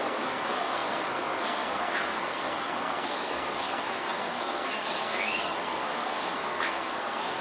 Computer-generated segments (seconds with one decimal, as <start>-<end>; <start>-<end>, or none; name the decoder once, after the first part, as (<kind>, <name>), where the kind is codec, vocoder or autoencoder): 0.0-7.4 (codec, SNAC)